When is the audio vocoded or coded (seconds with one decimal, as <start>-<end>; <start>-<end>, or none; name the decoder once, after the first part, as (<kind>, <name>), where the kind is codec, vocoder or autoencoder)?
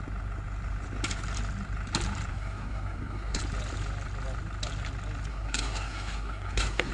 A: 2.3-3.4 (codec, SNAC); 5.3-6.9